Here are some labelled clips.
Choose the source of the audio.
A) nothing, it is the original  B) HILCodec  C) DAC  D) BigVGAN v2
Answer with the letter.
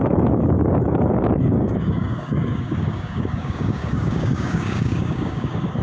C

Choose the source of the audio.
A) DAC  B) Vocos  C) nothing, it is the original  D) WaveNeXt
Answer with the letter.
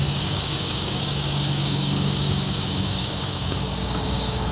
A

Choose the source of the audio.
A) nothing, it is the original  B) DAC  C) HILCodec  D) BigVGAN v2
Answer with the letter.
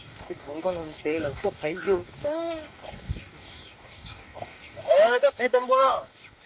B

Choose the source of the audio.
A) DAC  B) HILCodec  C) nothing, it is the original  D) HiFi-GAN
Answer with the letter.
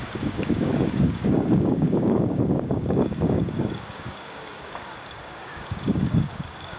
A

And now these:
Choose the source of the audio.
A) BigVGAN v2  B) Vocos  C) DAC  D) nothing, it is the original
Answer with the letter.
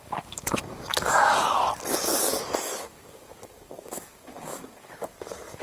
C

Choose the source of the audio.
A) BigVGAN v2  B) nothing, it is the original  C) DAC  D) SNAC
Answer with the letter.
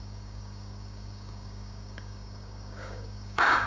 C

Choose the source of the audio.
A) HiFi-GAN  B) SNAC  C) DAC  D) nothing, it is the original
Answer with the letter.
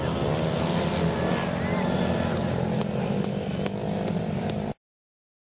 D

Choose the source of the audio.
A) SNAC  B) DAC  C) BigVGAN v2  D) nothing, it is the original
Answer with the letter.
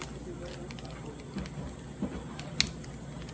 D